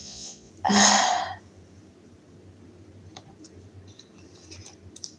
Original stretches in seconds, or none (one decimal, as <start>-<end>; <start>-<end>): 0.5-5.2